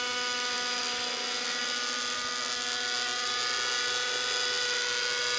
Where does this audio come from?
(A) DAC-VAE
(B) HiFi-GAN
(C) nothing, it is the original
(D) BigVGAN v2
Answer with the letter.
C